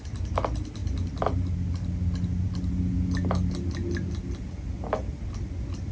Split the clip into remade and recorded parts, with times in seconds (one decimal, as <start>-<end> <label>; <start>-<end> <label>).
0.0-5.9 recorded